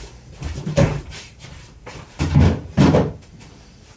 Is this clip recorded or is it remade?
remade